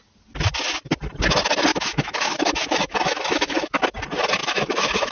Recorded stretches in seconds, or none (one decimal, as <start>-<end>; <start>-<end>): 0.0-1.7; 3.8-4.4